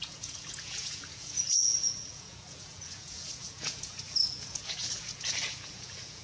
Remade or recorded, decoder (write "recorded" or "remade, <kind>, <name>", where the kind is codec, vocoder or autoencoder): remade, vocoder, Vocos